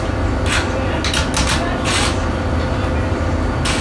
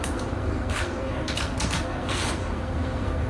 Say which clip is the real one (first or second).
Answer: first